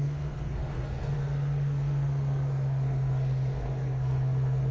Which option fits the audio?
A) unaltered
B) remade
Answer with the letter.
B